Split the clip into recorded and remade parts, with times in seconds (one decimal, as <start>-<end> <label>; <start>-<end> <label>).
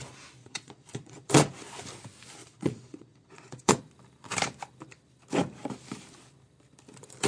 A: 0.0-0.4 recorded; 0.4-1.5 remade; 1.5-2.4 recorded; 2.4-3.8 remade; 3.8-7.3 recorded